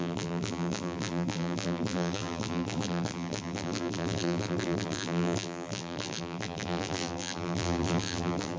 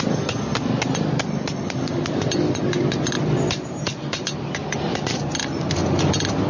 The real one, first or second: second